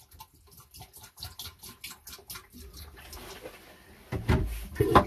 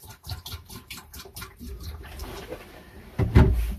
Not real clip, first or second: second